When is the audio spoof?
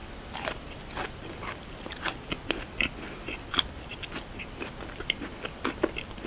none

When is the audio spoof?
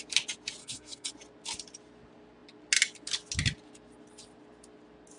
0.6-1.1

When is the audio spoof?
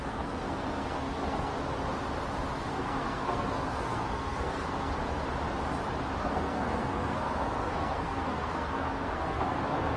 0.0-1.5; 2.6-4.9; 6.2-10.0